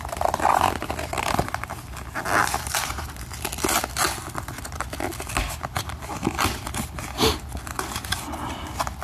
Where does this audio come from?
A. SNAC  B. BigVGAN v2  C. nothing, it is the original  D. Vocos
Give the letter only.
C